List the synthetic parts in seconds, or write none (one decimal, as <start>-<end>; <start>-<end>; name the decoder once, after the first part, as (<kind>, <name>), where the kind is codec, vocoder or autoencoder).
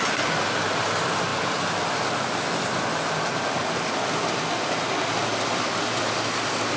none